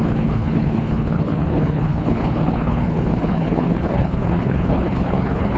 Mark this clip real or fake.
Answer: fake